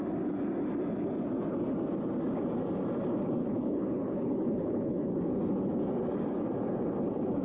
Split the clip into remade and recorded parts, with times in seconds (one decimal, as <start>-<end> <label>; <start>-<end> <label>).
0.0-3.4 recorded; 3.4-5.1 remade; 5.1-7.4 recorded